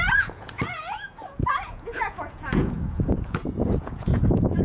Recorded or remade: remade